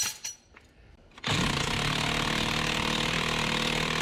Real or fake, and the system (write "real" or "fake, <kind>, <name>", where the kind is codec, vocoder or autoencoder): fake, vocoder, BigVGAN v2